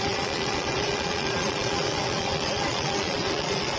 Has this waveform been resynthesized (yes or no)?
yes